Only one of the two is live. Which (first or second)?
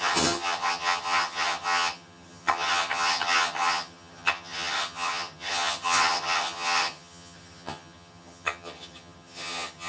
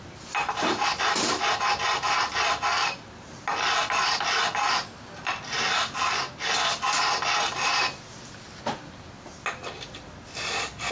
second